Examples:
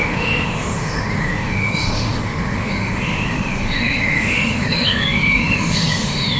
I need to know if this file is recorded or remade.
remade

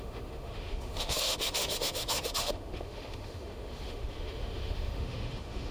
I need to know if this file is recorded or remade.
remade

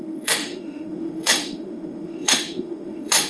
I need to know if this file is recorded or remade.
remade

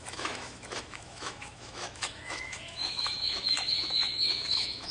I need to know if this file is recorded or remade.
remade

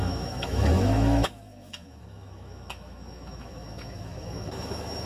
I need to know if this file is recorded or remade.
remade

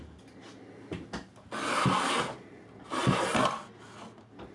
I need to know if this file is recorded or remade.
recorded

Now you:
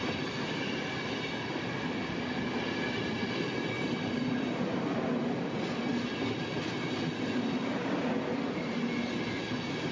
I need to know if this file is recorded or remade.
recorded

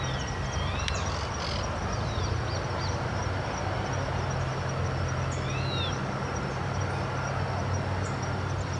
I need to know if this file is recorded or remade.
recorded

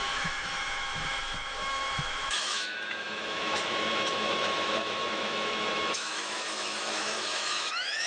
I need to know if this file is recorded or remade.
remade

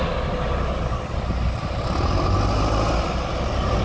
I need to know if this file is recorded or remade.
recorded